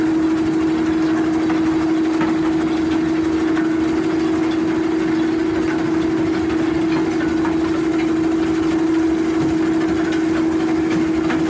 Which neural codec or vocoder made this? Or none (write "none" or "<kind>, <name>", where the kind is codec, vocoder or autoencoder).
none